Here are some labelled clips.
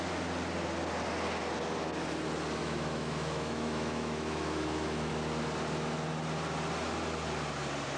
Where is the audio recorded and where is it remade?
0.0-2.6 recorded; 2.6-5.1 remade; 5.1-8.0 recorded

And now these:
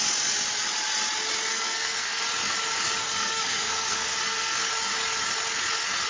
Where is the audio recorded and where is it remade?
0.0-1.5 recorded; 1.5-2.2 remade; 2.2-3.0 recorded; 3.0-4.7 remade; 4.7-6.1 recorded

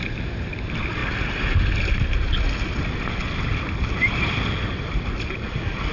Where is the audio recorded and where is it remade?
0.0-1.0 remade; 1.0-4.0 recorded; 4.0-5.9 remade